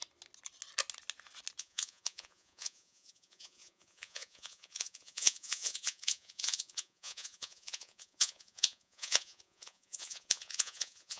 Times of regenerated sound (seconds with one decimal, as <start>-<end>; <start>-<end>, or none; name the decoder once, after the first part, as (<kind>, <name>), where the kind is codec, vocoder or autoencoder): 1.6-11.2 (vocoder, Vocos)